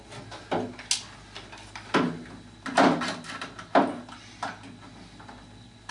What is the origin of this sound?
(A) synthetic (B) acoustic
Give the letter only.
B